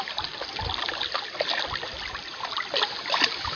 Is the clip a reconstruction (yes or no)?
no